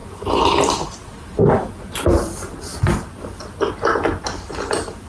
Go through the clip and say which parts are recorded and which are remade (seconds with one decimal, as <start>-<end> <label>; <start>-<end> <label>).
0.0-5.1 recorded